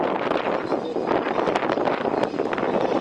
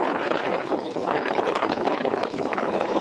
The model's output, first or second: second